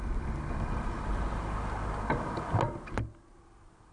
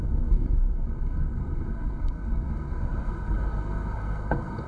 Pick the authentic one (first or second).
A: first